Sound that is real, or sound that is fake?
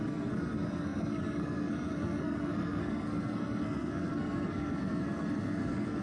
fake